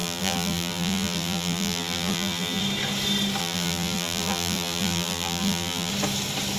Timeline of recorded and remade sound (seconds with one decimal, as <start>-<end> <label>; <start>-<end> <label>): 0.0-2.6 remade; 2.6-3.4 recorded; 3.4-5.9 remade; 5.9-6.6 recorded